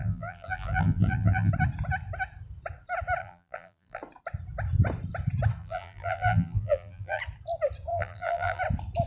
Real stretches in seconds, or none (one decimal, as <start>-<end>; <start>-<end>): 1.5-3.2; 4.0-5.6; 7.2-7.9; 8.6-9.1